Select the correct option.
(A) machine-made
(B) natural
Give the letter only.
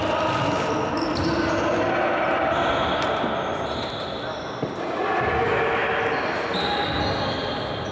B